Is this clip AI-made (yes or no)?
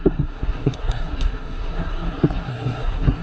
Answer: yes